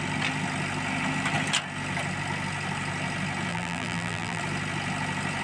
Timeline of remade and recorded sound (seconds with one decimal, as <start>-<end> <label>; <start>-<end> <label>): 0.0-3.5 recorded; 3.5-4.4 remade; 4.4-5.4 recorded